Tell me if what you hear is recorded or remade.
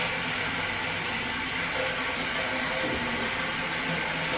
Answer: recorded